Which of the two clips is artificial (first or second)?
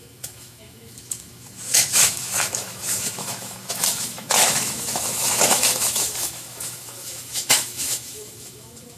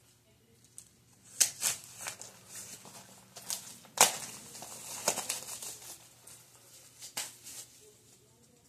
first